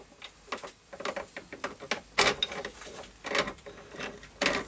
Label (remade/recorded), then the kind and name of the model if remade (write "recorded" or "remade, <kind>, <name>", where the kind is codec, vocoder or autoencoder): recorded